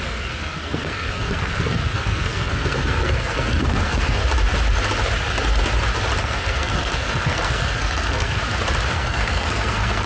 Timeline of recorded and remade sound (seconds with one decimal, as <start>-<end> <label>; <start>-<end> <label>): 0.0-4.2 remade; 4.2-6.2 recorded; 6.2-8.4 remade; 8.4-8.9 recorded; 8.9-10.1 remade